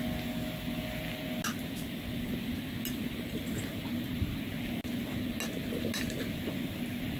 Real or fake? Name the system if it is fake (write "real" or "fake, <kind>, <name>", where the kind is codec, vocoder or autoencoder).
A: real